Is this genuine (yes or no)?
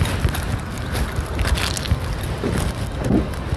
yes